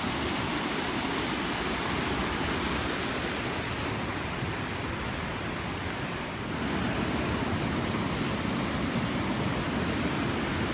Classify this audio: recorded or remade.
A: recorded